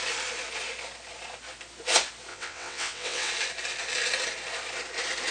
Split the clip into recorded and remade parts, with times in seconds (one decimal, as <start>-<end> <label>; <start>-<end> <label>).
0.0-2.3 recorded; 2.3-3.3 remade; 3.3-5.3 recorded